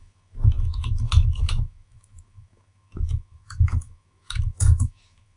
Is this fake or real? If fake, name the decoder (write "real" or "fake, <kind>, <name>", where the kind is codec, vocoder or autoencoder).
fake, autoencoder, DAC-VAE